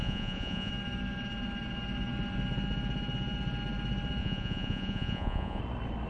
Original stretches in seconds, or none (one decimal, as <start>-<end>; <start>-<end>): 0.7-4.2; 5.6-6.1